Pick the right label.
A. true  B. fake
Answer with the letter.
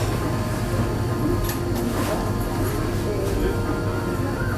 A